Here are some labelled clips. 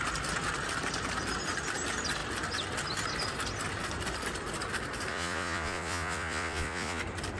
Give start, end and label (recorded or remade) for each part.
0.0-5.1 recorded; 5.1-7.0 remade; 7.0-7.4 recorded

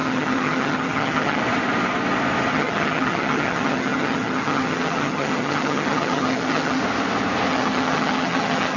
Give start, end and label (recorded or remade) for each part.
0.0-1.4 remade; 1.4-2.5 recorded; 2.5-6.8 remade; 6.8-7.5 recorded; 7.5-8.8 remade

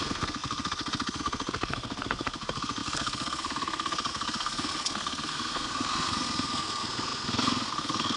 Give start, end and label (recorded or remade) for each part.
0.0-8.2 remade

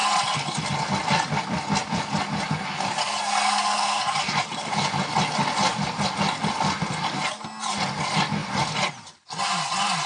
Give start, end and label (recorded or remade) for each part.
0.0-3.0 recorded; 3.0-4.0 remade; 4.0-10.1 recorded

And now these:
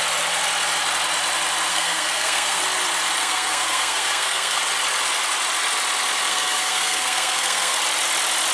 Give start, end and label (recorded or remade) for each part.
0.0-1.7 recorded; 1.7-2.6 remade; 2.6-3.2 recorded; 3.2-4.6 remade; 4.6-6.3 recorded; 6.3-7.8 remade; 7.8-8.5 recorded

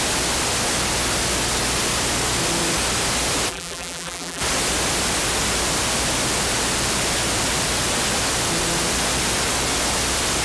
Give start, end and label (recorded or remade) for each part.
0.0-3.5 recorded; 3.5-4.4 remade; 4.4-10.4 recorded

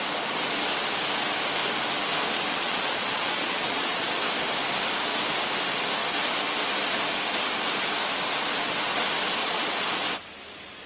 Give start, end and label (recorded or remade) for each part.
0.0-2.5 recorded; 2.5-4.1 remade; 4.1-9.4 recorded; 9.4-10.0 remade; 10.0-10.9 recorded

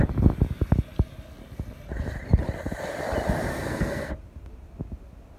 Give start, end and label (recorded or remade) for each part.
0.0-3.5 recorded; 3.5-4.1 remade; 4.1-5.4 recorded